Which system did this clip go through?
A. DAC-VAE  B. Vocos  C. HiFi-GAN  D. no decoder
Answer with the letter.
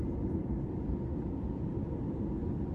D